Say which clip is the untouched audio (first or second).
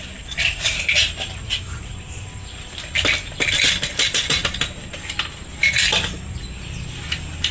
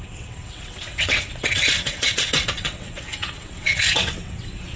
first